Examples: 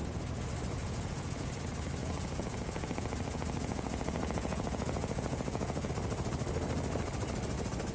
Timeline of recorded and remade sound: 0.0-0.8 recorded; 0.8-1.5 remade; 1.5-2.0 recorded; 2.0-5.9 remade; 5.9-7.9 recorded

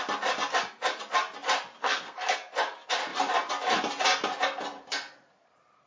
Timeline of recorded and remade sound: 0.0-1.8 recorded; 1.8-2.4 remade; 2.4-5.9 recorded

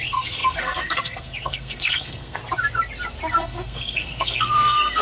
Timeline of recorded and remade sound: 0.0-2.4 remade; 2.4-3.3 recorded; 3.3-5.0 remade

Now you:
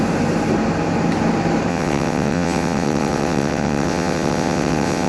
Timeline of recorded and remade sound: 0.0-1.7 recorded; 1.7-5.1 remade

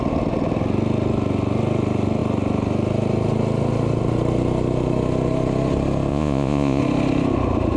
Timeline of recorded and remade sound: 0.0-6.1 recorded; 6.1-6.8 remade; 6.8-7.8 recorded

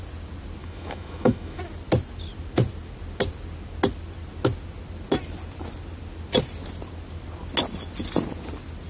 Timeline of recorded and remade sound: 0.0-0.6 recorded; 0.6-1.6 remade; 1.6-8.9 recorded